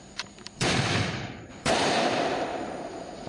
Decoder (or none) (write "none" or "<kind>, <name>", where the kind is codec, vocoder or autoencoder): vocoder, BigVGAN v2